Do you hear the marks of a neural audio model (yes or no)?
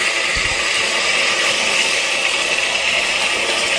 no